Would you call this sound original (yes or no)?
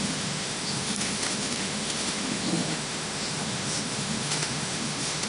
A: no